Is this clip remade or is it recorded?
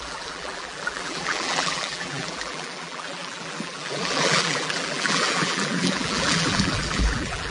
remade